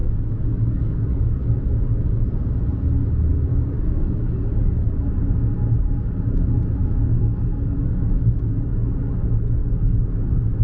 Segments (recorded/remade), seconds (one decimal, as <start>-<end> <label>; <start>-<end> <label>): 0.0-1.6 remade; 1.6-3.5 recorded; 3.5-4.3 remade; 4.3-6.8 recorded; 6.8-8.7 remade; 8.7-9.6 recorded; 9.6-10.2 remade; 10.2-10.6 recorded